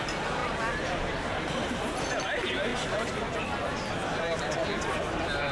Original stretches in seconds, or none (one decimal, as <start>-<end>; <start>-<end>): 0.0-5.5